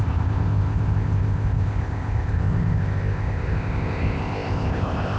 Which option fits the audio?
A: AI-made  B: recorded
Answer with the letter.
A